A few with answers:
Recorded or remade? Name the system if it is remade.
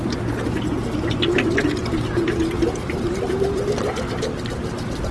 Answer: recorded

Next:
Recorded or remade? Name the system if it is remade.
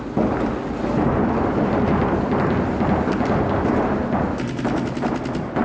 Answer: recorded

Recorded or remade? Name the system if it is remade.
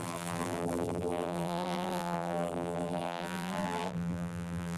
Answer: remade, vocoder, BigVGAN v2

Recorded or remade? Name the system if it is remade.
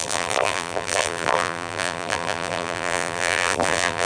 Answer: remade, vocoder, BigVGAN v2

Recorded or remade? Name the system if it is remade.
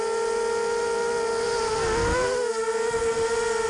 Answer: recorded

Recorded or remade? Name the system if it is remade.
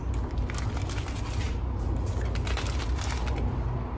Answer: recorded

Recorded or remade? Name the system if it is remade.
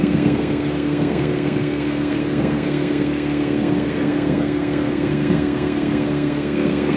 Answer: remade, codec, SNAC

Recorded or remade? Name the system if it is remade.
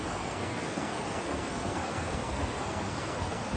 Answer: remade, codec, SNAC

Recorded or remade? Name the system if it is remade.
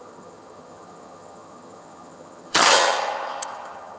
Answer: remade, vocoder, HiFi-GAN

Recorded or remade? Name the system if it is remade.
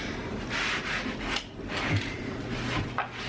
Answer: recorded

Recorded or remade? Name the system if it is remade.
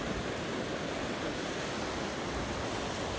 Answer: recorded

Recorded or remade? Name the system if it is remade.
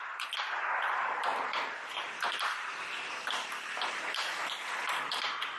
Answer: remade, vocoder, BigVGAN v2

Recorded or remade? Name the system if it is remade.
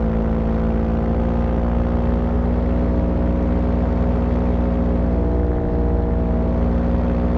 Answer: recorded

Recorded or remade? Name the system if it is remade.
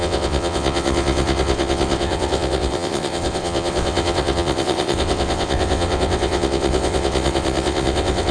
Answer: remade, vocoder, WaveNeXt